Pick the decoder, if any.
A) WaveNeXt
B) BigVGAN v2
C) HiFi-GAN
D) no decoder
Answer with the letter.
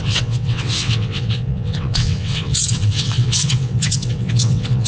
A